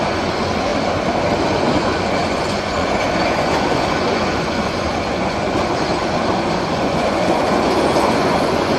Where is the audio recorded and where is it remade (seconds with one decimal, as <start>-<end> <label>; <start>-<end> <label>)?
0.0-0.7 remade; 0.7-1.4 recorded; 1.4-8.8 remade